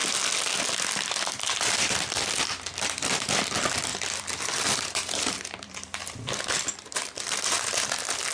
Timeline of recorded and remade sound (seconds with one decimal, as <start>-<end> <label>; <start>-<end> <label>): 0.0-0.6 recorded; 0.6-8.3 remade